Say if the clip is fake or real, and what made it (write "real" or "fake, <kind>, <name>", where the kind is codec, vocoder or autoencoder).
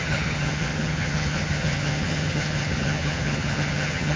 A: fake, vocoder, HiFi-GAN